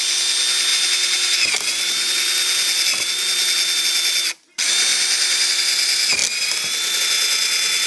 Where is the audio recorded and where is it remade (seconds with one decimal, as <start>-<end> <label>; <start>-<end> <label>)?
0.0-7.9 recorded